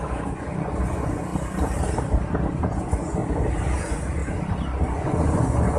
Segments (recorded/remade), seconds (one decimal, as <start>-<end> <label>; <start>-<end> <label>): 0.0-1.3 remade; 1.3-2.5 recorded; 2.5-3.2 remade; 3.2-3.8 recorded; 3.8-4.2 remade; 4.2-4.8 recorded; 4.8-5.8 remade